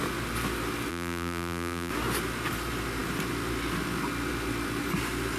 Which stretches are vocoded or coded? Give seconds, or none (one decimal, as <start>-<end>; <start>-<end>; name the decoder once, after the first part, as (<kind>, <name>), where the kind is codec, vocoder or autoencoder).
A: 0.9-1.9 (vocoder, BigVGAN v2)